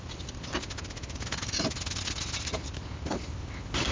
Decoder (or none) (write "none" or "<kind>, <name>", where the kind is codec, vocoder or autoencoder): none